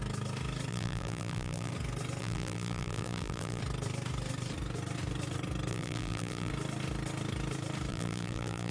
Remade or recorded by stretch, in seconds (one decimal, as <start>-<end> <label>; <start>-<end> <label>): 0.0-0.7 recorded; 0.7-1.7 remade; 1.7-2.2 recorded; 2.2-3.6 remade; 3.6-5.7 recorded; 5.7-6.5 remade; 6.5-7.9 recorded; 7.9-8.7 remade